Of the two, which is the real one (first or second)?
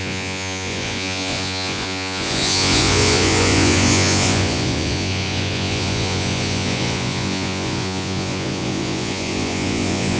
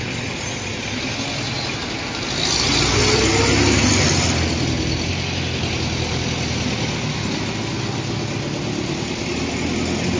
second